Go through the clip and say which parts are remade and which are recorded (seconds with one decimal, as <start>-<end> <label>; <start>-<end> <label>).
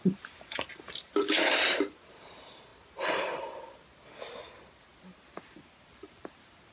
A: 0.0-2.7 remade; 2.7-5.7 recorded; 5.7-6.7 remade